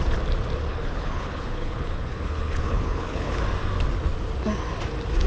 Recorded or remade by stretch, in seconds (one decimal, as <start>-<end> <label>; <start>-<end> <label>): 0.0-0.7 recorded; 0.7-3.4 remade; 3.4-5.3 recorded